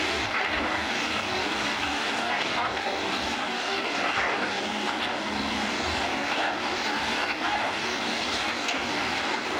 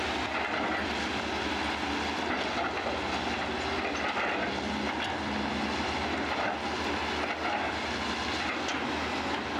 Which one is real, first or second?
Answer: second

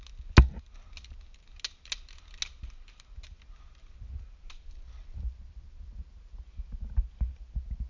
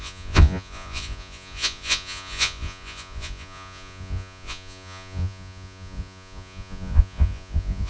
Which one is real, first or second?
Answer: first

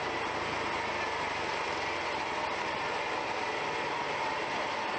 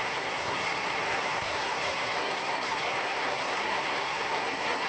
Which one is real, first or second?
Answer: first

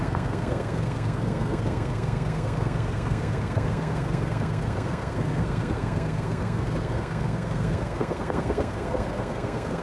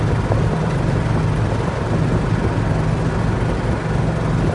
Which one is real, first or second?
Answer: second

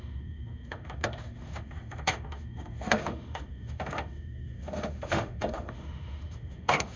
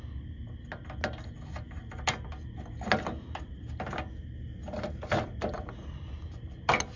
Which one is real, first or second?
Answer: second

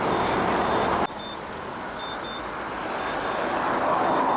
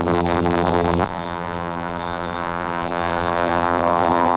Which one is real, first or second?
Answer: first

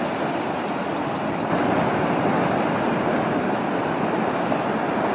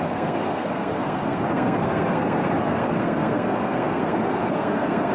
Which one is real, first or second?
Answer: first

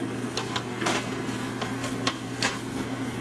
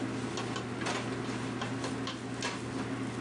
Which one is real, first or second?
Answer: second